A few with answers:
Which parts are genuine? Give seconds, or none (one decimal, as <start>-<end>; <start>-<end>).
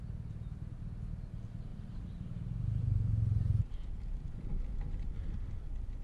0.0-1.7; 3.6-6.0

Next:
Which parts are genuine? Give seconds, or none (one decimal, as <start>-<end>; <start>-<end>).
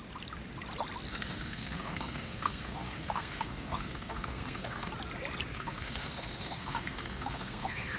0.0-1.1; 4.9-5.5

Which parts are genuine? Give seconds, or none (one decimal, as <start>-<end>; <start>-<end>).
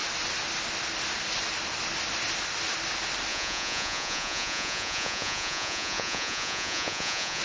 0.0-3.3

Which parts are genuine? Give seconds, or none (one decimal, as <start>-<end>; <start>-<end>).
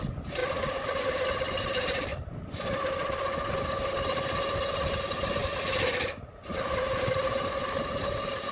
0.4-1.6; 2.1-5.0; 5.4-6.3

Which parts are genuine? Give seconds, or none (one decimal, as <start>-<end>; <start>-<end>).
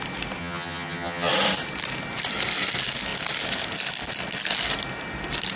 0.0-0.4; 1.3-5.6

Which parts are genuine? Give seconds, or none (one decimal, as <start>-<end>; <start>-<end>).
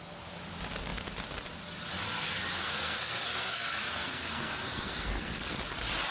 0.0-2.6; 5.6-6.1